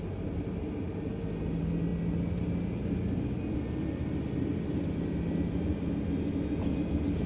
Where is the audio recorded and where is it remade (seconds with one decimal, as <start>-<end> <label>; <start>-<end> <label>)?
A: 0.0-7.3 recorded